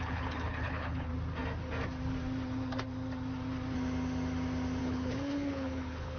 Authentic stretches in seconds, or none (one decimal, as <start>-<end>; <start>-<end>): 1.1-4.8

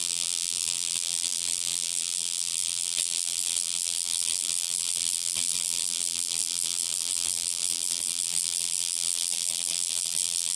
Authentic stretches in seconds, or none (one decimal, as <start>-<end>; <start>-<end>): none

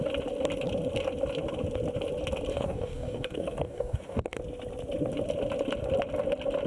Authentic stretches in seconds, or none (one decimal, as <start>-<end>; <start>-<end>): 0.0-2.5; 4.4-6.7

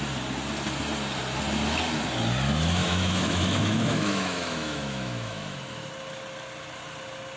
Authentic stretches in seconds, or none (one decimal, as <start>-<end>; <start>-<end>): 0.0-2.8; 5.9-7.4

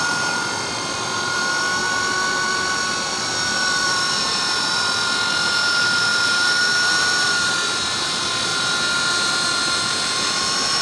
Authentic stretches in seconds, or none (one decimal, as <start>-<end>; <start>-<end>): 8.5-9.2

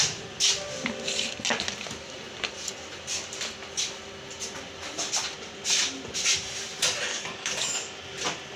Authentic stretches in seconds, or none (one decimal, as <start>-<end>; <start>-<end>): 0.0-7.1; 8.0-8.6